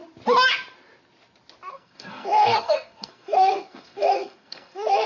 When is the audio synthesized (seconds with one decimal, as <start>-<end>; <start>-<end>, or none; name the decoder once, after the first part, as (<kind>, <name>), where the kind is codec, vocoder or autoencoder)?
1.7-5.1 (codec, SNAC)